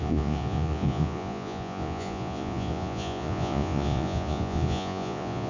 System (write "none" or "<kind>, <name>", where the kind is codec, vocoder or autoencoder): vocoder, Vocos